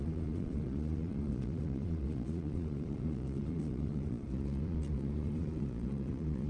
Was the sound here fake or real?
fake